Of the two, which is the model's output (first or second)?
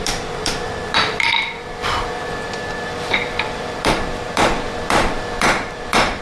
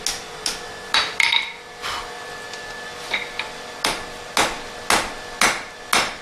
first